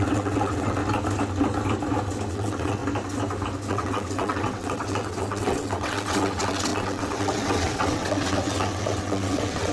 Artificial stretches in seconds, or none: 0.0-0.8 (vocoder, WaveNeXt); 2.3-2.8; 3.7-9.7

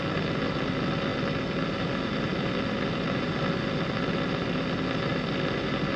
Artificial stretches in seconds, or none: none